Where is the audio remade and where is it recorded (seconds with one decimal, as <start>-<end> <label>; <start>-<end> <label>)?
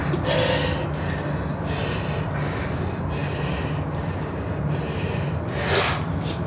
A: 0.0-6.5 recorded